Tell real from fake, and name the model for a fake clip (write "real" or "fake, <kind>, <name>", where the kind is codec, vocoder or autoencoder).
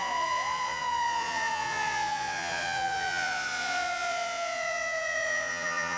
fake, vocoder, Vocos